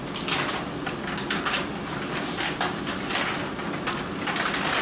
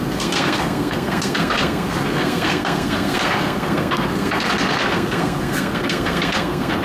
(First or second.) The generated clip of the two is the second